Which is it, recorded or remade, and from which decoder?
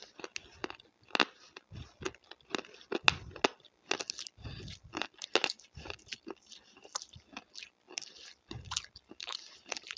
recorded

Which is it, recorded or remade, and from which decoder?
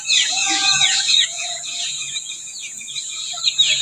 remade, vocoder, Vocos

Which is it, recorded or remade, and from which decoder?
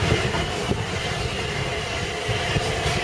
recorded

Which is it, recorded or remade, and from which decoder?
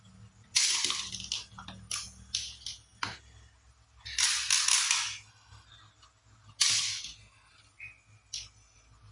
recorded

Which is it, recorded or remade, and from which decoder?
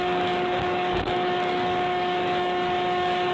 remade, codec, DAC